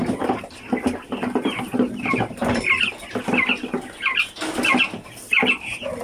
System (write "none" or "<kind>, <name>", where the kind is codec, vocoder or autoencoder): none